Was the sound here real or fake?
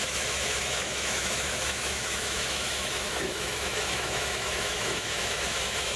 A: fake